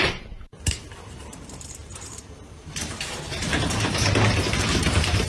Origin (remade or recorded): remade